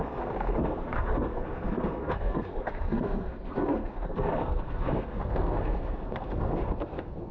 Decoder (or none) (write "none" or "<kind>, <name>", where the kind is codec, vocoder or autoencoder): codec, SNAC